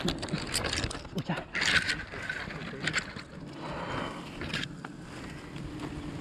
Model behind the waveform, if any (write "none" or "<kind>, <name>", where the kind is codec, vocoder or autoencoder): none